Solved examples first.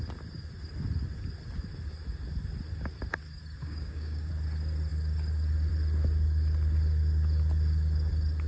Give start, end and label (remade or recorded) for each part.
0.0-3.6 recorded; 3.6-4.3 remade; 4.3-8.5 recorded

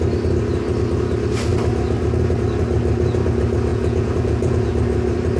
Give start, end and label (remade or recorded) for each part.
0.0-3.7 recorded; 3.7-4.7 remade; 4.7-5.4 recorded

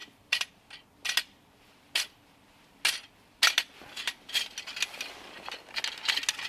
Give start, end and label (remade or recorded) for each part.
0.0-0.5 remade; 0.5-6.5 recorded

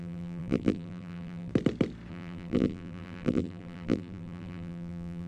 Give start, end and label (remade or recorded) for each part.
0.0-1.5 remade; 1.5-2.1 recorded; 2.1-5.3 remade

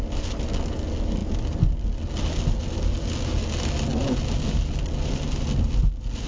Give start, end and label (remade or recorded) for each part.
0.0-6.3 recorded